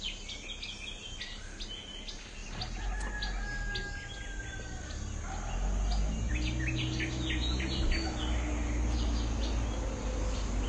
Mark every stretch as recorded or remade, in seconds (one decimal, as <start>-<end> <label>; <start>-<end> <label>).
0.0-10.7 recorded

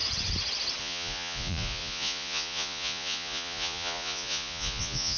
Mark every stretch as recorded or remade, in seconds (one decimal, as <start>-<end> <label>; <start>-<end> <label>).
0.0-0.8 recorded; 0.8-5.2 remade

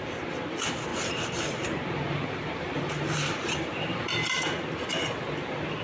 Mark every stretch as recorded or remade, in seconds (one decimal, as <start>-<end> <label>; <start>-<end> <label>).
0.0-0.9 recorded; 0.9-4.4 remade; 4.4-5.8 recorded

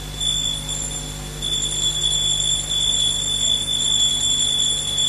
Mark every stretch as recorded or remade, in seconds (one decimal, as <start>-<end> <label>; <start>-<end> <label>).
0.0-5.1 recorded

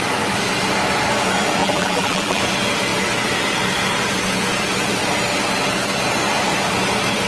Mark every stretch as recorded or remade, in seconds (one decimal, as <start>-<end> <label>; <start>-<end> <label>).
0.0-1.6 recorded; 1.6-2.4 remade; 2.4-7.3 recorded